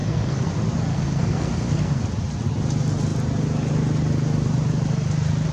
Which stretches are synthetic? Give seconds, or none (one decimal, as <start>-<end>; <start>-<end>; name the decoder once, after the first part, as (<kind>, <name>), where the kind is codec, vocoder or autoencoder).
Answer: 0.0-0.5 (codec, SNAC); 0.9-2.0

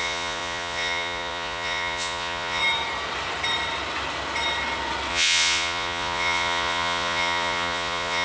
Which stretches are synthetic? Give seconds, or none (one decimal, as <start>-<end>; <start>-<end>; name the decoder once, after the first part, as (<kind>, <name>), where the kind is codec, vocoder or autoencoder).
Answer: 0.0-2.6 (vocoder, Vocos); 5.1-8.2

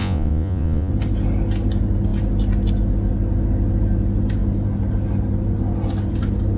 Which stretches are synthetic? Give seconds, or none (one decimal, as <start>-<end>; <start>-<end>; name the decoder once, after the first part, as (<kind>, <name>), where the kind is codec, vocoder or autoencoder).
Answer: 0.0-0.9 (vocoder, Vocos)

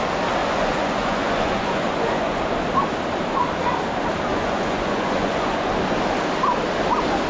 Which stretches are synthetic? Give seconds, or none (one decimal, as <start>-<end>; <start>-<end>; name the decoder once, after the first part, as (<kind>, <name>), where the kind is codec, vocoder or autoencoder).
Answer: 0.4-2.4 (vocoder, Vocos); 4.3-5.7

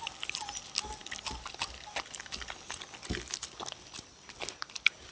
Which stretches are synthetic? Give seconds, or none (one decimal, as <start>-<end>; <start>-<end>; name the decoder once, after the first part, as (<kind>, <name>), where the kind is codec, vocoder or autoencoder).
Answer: none

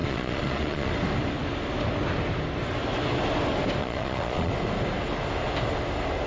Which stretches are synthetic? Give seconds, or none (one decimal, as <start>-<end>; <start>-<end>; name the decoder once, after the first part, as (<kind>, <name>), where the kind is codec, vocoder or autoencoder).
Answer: 0.0-0.9 (vocoder, Vocos); 3.8-4.5

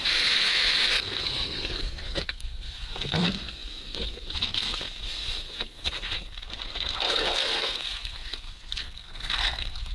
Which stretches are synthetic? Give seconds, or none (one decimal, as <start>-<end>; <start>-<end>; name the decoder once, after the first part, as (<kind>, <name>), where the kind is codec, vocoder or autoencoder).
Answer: 0.0-9.9 (codec, SNAC)

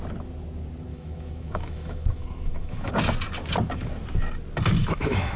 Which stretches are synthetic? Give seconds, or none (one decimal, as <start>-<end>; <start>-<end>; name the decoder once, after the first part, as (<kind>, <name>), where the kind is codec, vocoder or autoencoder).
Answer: 0.9-2.9 (autoencoder, DAC-VAE); 4.8-5.4